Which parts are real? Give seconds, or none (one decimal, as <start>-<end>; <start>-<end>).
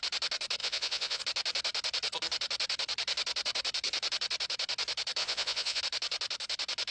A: 0.0-0.6; 1.2-5.2; 5.8-6.9